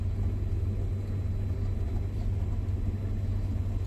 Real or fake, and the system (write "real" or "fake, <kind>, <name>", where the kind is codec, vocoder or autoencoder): real